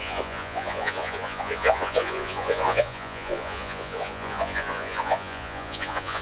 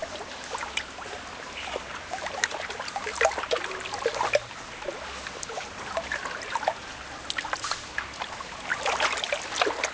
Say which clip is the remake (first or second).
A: first